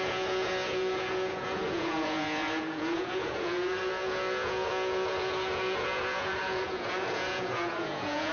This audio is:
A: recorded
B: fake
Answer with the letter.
B